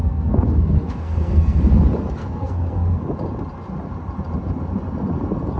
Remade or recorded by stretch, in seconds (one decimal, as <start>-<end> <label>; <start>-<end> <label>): 0.0-1.6 remade; 1.6-2.2 recorded; 2.2-3.0 remade; 3.0-5.6 recorded